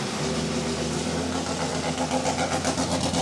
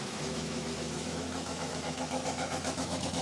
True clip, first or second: first